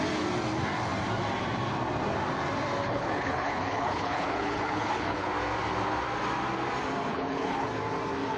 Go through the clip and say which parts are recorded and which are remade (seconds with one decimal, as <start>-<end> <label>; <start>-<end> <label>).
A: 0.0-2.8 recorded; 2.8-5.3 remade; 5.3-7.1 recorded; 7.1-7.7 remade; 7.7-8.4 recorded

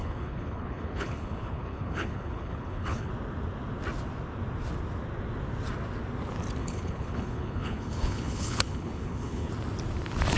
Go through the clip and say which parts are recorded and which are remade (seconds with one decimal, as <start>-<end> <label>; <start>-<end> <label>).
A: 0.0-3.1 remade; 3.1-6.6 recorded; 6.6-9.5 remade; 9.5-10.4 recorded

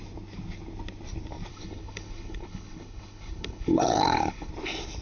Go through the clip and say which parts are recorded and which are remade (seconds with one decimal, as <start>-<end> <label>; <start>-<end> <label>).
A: 0.0-1.5 recorded; 1.5-4.5 remade; 4.5-5.0 recorded

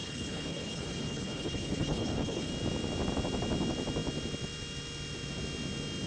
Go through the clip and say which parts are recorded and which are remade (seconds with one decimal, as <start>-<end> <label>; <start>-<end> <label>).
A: 0.0-2.5 remade; 2.5-6.1 recorded

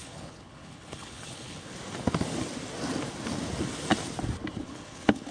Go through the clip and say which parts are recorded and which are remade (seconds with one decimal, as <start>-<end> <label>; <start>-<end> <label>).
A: 0.0-1.7 remade; 1.7-4.6 recorded; 4.6-5.3 remade

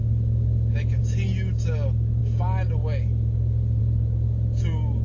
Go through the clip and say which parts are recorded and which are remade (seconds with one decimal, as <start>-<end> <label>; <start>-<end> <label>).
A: 0.0-5.0 recorded

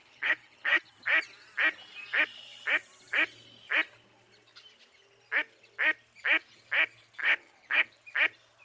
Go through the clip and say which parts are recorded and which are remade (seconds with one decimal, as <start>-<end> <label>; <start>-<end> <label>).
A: 0.0-0.8 remade; 0.8-7.2 recorded; 7.2-7.9 remade; 7.9-8.6 recorded